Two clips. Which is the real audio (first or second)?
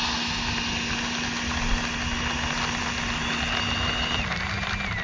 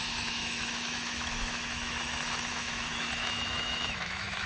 first